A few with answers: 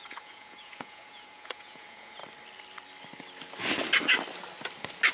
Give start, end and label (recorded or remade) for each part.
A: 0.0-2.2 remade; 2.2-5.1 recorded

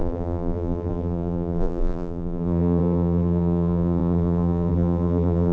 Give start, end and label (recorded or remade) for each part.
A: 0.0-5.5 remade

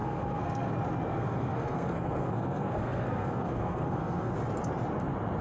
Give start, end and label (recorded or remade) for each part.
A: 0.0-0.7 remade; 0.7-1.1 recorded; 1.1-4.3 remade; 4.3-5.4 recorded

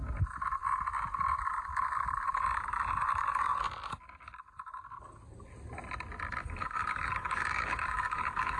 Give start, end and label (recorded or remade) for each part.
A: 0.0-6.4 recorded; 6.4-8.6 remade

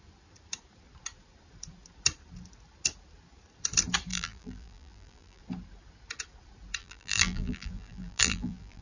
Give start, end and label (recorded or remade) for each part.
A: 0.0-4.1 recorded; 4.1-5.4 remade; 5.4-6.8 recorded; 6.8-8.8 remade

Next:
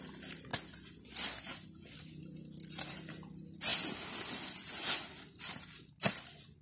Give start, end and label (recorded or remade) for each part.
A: 0.0-0.5 remade; 0.5-2.2 recorded; 2.2-3.7 remade; 3.7-5.4 recorded; 5.4-6.6 remade